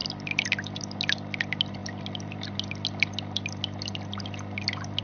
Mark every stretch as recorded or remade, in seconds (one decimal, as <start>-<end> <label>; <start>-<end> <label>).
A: 0.0-5.0 recorded